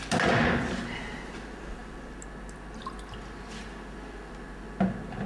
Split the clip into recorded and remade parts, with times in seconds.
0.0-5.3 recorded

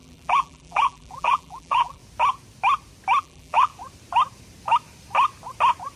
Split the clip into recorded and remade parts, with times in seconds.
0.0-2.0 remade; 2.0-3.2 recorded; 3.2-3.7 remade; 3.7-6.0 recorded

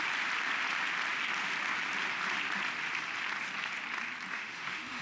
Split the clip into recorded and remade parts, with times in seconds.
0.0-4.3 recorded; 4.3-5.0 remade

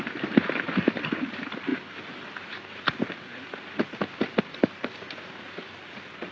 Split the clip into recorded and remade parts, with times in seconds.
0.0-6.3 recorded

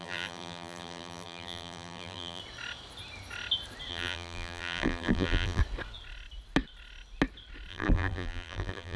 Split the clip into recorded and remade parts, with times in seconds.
0.0-2.4 remade; 2.4-3.9 recorded; 3.9-5.6 remade; 5.6-7.7 recorded; 7.7-9.0 remade

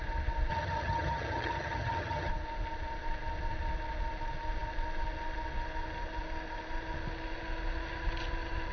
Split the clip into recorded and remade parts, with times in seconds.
0.0-0.5 recorded; 0.5-2.3 remade; 2.3-8.7 recorded

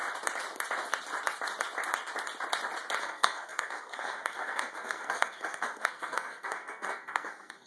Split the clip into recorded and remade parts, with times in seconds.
0.0-3.0 recorded; 3.0-7.7 remade

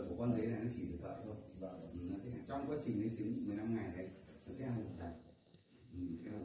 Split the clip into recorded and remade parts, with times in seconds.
0.0-4.9 recorded; 4.9-6.4 remade